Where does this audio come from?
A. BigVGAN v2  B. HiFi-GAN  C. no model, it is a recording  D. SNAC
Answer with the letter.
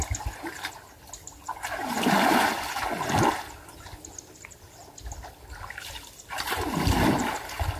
C